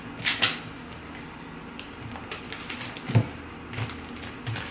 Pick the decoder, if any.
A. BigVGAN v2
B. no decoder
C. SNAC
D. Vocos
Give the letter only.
B